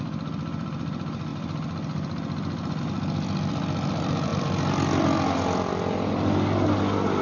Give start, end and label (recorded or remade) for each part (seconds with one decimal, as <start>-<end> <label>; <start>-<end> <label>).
0.0-7.2 recorded